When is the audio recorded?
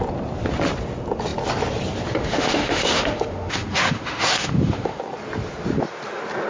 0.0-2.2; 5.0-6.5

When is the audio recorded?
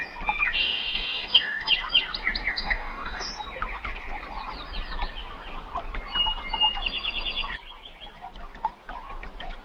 0.0-0.6; 1.7-2.5; 3.3-9.6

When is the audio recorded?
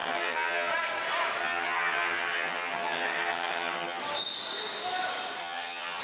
0.7-1.4; 4.0-5.4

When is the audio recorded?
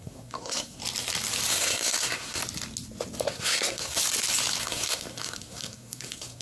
0.8-1.5; 2.4-3.3; 4.0-4.6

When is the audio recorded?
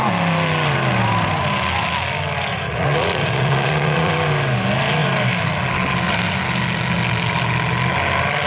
0.0-2.5; 4.1-8.5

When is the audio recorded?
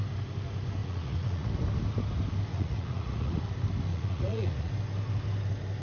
0.0-0.8; 1.5-2.5; 3.4-3.9; 4.7-5.8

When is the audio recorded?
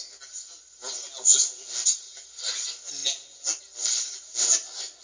0.0-5.0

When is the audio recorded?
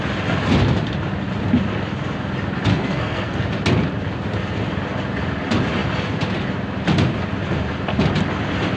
0.0-2.7; 3.4-8.8